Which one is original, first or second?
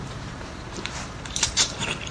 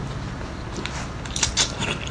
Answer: second